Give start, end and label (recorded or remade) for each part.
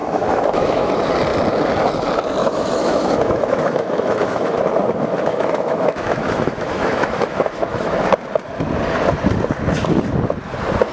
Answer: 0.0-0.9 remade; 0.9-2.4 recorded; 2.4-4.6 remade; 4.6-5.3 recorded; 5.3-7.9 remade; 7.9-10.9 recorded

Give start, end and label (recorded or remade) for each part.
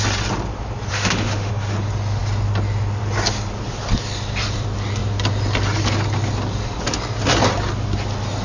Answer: 0.0-0.9 recorded; 0.9-1.5 remade; 1.5-8.4 recorded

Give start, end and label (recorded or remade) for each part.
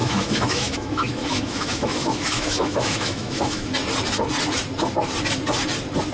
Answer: 0.0-3.7 remade; 3.7-6.1 recorded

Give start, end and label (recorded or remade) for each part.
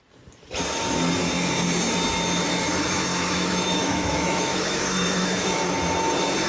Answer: 0.0-3.1 recorded; 3.1-5.6 remade; 5.6-6.5 recorded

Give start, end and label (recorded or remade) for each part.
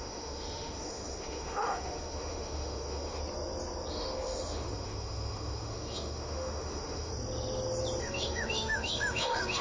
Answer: 0.0-3.2 remade; 3.2-3.9 recorded; 3.9-7.1 remade; 7.1-8.0 recorded; 8.0-9.6 remade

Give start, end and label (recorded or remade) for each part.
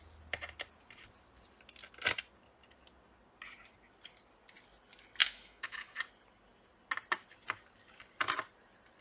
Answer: 0.0-5.2 recorded; 5.2-6.0 remade; 6.0-9.0 recorded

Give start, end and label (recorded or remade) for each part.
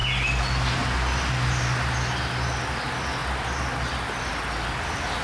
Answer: 0.0-5.2 recorded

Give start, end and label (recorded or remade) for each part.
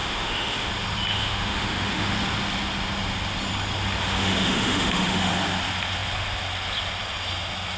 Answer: 0.0-0.7 remade; 0.7-1.1 recorded; 1.1-2.1 remade; 2.1-4.2 recorded; 4.2-5.3 remade; 5.3-7.8 recorded